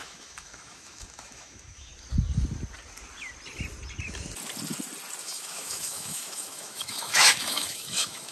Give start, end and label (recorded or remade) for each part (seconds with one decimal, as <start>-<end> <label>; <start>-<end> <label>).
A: 0.0-1.9 remade; 1.9-5.2 recorded; 5.2-8.3 remade